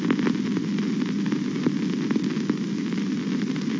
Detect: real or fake real